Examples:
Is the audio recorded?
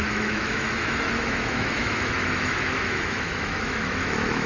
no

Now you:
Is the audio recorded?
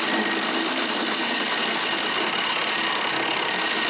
yes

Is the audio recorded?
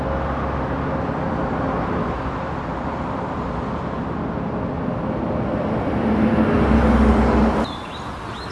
yes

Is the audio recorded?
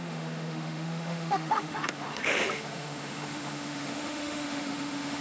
no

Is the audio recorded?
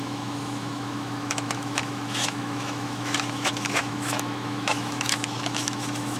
no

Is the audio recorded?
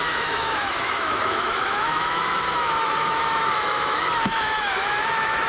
no